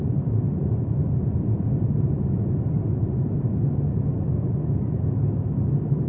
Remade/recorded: recorded